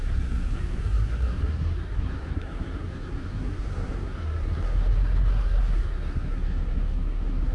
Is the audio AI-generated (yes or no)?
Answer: yes